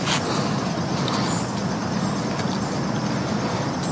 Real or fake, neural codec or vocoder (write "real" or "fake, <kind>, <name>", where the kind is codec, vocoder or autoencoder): real